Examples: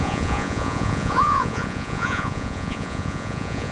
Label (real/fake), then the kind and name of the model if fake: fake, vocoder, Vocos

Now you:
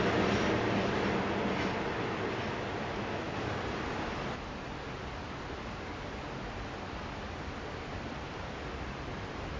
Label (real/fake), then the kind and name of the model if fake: real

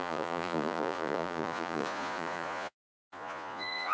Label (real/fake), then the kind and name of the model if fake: fake, vocoder, Vocos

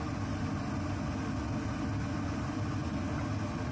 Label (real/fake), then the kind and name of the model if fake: real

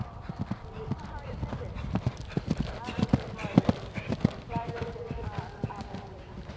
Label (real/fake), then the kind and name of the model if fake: real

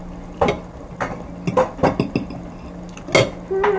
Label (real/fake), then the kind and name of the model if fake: real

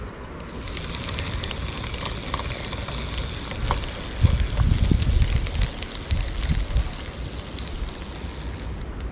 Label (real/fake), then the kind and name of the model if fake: real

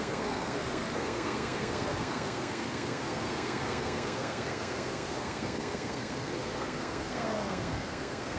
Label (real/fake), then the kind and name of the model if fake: fake, codec, SNAC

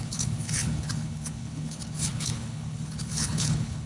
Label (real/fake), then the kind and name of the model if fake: fake, codec, HILCodec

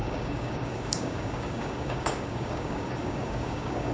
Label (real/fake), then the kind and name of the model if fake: fake, codec, DAC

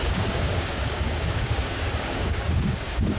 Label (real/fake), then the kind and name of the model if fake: fake, codec, DAC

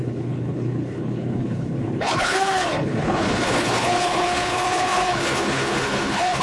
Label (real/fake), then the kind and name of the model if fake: fake, codec, HILCodec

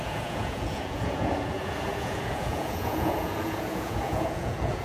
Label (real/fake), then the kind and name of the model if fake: fake, vocoder, Vocos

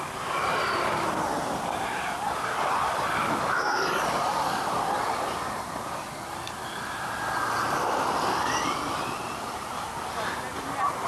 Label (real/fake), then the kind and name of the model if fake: real